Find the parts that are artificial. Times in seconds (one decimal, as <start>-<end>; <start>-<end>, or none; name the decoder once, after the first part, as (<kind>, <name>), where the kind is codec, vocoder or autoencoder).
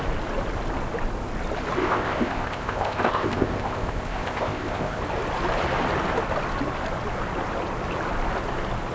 1.8-5.0 (codec, ZipCodec)